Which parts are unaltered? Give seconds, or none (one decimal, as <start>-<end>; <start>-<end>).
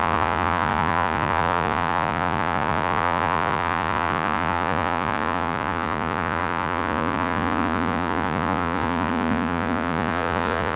none